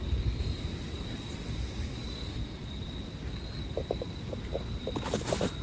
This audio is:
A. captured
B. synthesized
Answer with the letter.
A